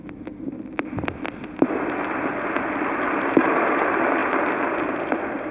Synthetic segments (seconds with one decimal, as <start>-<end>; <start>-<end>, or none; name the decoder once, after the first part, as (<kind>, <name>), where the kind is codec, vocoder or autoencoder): 0.0-5.5 (vocoder, BigVGAN v2)